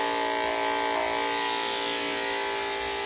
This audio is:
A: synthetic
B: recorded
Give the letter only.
B